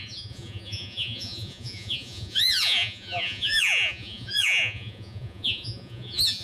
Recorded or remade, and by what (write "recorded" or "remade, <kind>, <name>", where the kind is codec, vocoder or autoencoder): remade, vocoder, Vocos